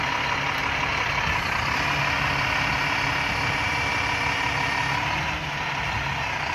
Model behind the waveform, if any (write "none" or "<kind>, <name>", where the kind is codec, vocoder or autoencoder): none